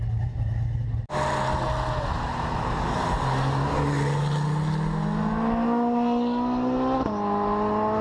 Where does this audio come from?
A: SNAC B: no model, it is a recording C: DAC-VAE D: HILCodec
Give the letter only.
B